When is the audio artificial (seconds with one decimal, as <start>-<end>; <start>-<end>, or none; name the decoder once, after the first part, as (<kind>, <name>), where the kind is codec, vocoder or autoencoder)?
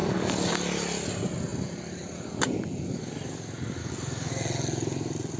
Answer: 0.0-0.5 (codec, DAC); 3.8-4.3